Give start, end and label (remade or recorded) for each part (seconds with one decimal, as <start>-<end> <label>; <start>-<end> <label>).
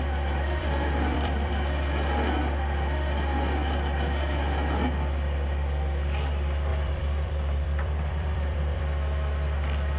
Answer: 0.0-0.6 recorded; 0.6-1.5 remade; 1.5-6.7 recorded; 6.7-8.8 remade; 8.8-10.0 recorded